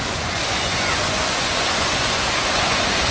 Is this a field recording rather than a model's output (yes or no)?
no